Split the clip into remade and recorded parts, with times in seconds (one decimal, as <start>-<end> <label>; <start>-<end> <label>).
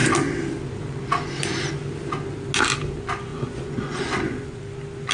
0.0-3.3 recorded; 3.3-4.6 remade; 4.6-5.1 recorded